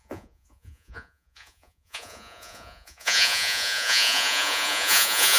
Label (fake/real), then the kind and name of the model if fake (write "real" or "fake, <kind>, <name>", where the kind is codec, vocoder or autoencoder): fake, vocoder, Vocos